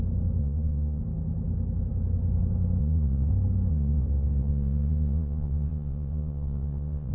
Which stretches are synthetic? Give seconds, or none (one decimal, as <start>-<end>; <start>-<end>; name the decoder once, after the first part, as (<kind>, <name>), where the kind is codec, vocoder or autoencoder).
0.4-1.0 (vocoder, Vocos); 2.8-3.3; 3.7-7.1